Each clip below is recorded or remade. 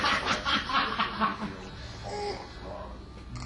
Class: recorded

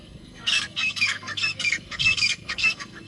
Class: remade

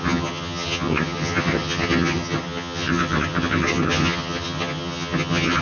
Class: remade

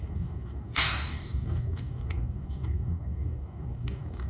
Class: remade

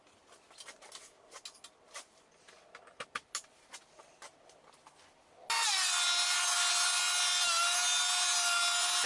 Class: recorded